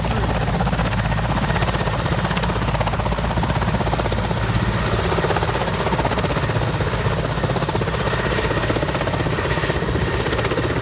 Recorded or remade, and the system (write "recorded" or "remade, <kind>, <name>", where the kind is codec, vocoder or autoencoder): recorded